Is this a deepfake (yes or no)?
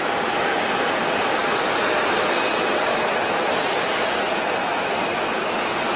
no